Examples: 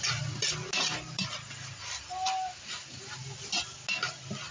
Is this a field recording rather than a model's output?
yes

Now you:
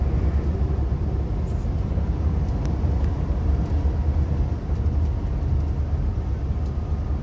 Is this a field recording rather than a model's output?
yes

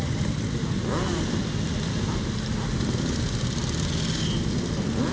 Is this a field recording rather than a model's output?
yes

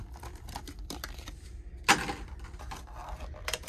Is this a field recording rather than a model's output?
yes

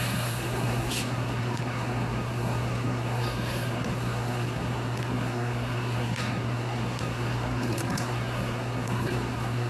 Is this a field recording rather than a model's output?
no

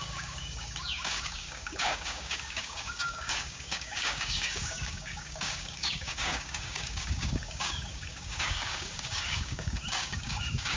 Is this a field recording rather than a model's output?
no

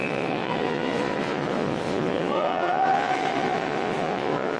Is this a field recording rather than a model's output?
no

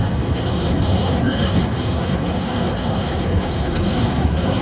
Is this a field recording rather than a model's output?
no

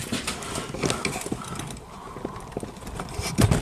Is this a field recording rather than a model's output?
yes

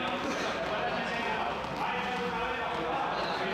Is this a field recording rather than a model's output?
yes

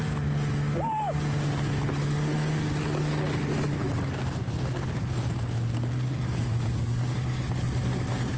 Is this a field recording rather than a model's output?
yes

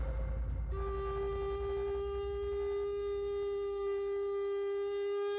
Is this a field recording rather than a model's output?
yes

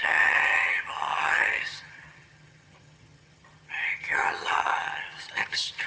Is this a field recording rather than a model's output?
no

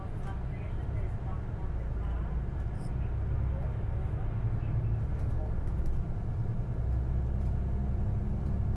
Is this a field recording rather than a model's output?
yes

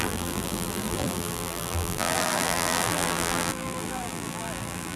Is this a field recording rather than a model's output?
no